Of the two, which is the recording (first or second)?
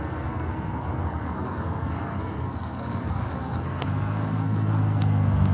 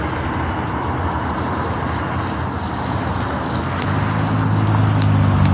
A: second